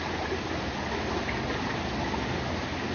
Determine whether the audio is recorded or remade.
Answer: recorded